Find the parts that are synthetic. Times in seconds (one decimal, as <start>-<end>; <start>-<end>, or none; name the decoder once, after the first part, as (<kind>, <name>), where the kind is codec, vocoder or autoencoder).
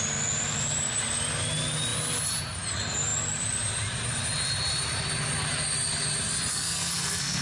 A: 6.5-7.4 (codec, SNAC)